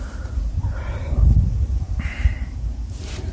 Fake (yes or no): yes